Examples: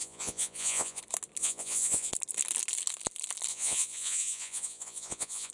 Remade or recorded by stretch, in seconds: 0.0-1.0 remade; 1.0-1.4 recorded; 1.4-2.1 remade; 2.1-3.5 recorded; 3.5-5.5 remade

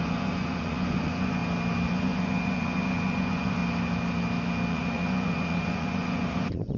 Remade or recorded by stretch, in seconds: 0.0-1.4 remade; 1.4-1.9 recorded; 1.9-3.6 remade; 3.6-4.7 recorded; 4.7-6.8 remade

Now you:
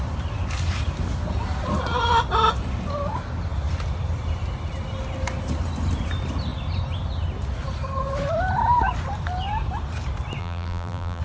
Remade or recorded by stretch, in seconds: 0.0-10.4 recorded; 10.4-11.2 remade

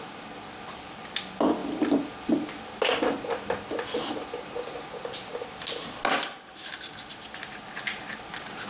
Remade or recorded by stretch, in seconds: 0.0-8.7 recorded

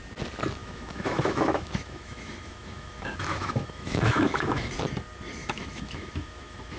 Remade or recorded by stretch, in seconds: 0.0-0.6 recorded; 0.6-4.7 remade; 4.7-5.4 recorded; 5.4-6.8 remade

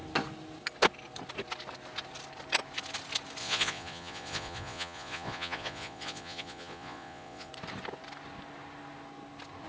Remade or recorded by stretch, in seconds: 0.0-3.4 recorded; 3.4-7.5 remade; 7.5-9.7 recorded

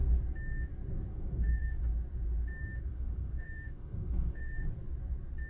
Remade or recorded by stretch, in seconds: 0.0-1.1 recorded; 1.1-1.8 remade; 1.8-2.9 recorded; 2.9-4.6 remade; 4.6-5.5 recorded

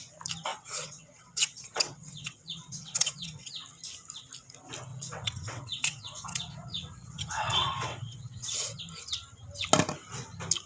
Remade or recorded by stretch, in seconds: 0.0-0.5 recorded; 0.5-3.5 remade; 3.5-4.9 recorded; 4.9-8.8 remade; 8.8-10.7 recorded